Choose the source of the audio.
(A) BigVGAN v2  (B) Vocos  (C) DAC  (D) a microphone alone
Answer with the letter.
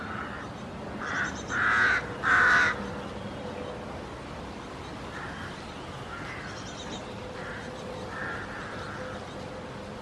D